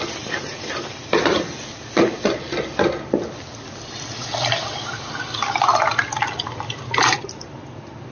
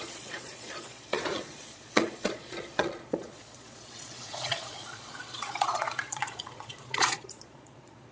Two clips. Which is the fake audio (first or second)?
second